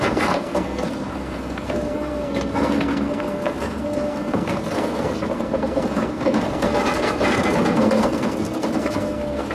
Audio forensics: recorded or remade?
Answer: remade